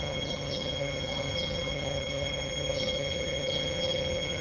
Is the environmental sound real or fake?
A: fake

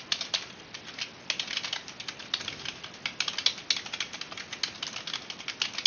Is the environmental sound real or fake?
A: real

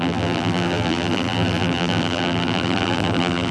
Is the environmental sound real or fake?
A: fake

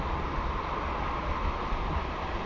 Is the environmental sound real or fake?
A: real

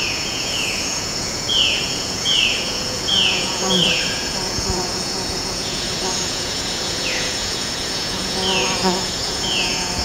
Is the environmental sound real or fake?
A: fake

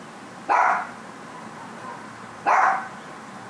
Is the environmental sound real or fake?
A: real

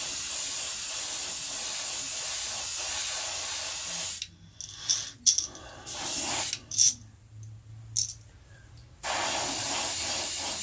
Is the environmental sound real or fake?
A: real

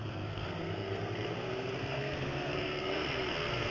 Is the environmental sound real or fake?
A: fake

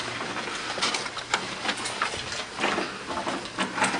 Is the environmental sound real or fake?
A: real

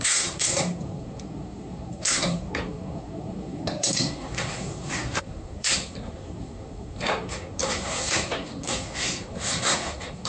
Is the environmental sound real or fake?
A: fake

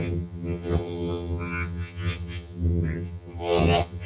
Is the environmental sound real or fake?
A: fake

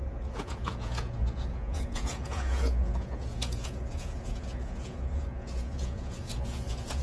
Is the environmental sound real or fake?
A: fake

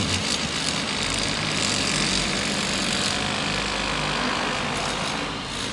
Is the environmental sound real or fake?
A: real